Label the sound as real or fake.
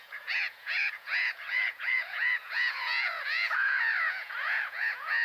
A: fake